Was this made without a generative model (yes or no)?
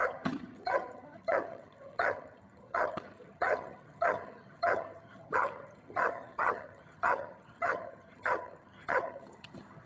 no